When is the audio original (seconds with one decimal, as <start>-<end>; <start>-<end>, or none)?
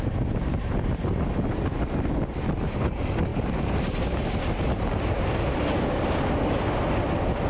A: 0.0-7.5